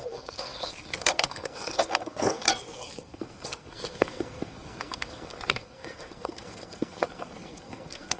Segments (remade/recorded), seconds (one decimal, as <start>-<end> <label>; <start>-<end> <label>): 0.0-8.2 remade

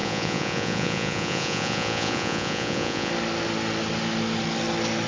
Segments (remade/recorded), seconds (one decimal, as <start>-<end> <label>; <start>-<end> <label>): 0.0-3.1 remade; 3.1-5.1 recorded

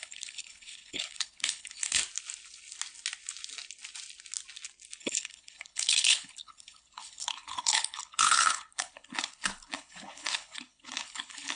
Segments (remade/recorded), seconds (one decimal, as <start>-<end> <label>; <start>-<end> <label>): 0.0-2.0 remade; 2.0-5.0 recorded; 5.0-11.6 remade